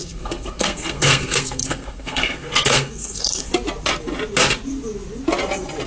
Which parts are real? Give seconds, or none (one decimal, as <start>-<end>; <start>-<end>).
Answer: 3.5-5.9